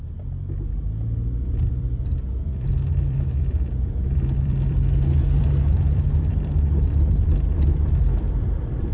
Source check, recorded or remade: remade